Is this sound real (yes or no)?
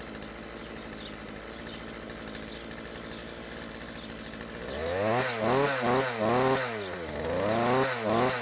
yes